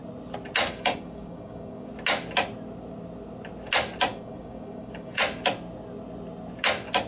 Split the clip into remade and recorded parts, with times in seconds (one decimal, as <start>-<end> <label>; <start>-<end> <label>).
0.0-0.7 recorded; 0.7-1.9 remade; 1.9-4.1 recorded; 4.1-5.2 remade; 5.2-7.1 recorded